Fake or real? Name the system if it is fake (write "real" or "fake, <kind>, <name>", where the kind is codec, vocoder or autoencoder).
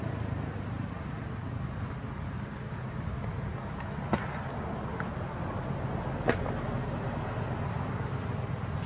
real